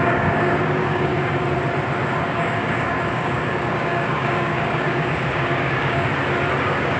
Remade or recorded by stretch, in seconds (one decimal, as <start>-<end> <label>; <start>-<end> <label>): 0.0-1.1 remade; 1.1-2.3 recorded; 2.3-6.1 remade; 6.1-6.6 recorded; 6.6-7.0 remade